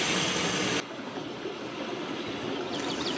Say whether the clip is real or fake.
real